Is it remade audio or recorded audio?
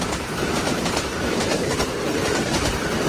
remade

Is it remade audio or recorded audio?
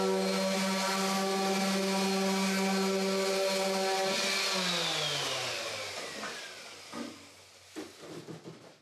recorded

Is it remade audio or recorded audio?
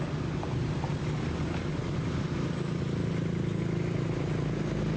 recorded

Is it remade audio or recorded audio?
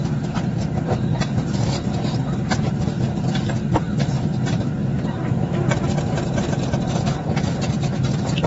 remade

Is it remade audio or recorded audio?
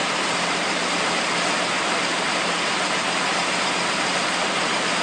remade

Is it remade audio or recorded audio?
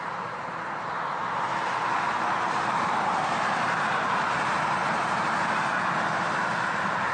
remade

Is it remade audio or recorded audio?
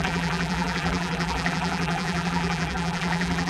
remade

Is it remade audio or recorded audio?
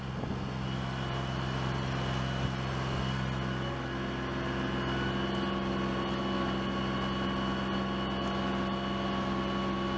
recorded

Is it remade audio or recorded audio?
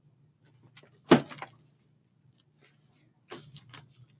recorded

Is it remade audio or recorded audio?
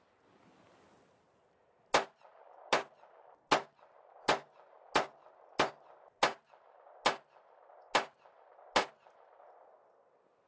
recorded